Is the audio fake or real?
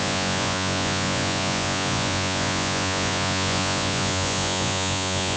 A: fake